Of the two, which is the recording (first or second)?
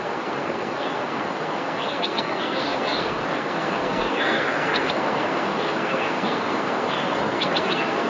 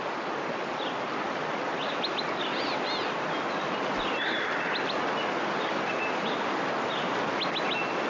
second